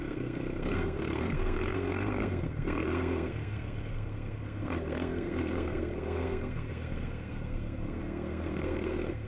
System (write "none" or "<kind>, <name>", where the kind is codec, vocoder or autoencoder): codec, SNAC